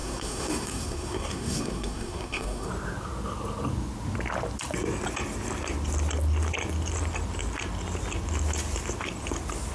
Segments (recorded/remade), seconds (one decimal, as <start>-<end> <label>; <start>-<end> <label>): 0.0-2.7 remade; 2.7-9.7 recorded